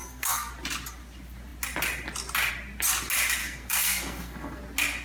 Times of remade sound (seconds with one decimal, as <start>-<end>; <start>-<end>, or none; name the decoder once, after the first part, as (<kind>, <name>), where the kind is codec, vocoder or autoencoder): 0.0-0.5 (codec, SNAC); 3.4-4.6